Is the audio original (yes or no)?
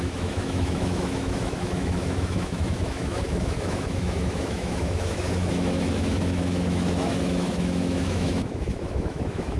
no